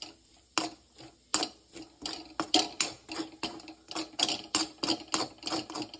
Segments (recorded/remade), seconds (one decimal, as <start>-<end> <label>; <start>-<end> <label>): 0.0-6.0 recorded